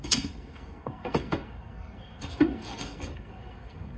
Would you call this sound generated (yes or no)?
yes